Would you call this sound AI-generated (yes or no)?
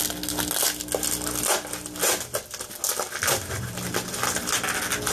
no